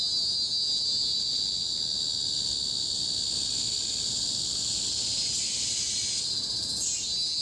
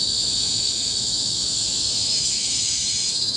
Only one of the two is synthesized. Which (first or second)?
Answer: second